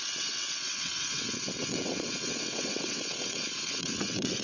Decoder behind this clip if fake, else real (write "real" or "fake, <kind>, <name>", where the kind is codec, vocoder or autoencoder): fake, vocoder, WaveNeXt